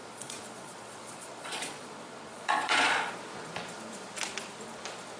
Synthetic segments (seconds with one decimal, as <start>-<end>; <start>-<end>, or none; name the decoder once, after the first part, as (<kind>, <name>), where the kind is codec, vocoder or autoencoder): 0.0-3.1 (vocoder, Vocos)